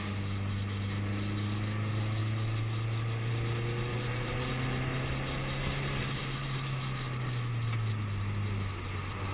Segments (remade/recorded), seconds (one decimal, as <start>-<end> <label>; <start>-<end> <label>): 0.0-3.9 recorded; 3.9-4.5 remade; 4.5-9.3 recorded